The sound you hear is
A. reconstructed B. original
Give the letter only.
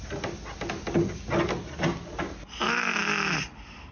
B